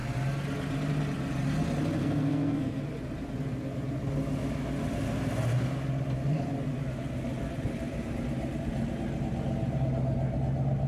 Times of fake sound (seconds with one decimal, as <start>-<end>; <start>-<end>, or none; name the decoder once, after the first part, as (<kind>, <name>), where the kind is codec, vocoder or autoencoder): 2.0-2.8 (codec, SNAC)